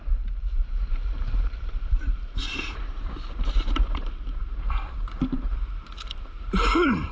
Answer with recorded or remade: remade